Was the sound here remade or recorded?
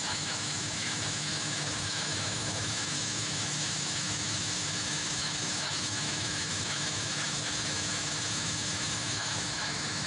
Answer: remade